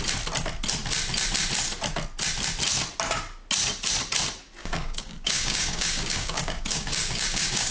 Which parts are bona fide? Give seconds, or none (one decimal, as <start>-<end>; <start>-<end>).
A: 0.0-4.6

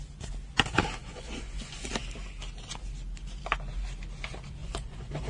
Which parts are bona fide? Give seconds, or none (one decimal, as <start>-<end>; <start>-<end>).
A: 0.0-1.0; 1.9-4.6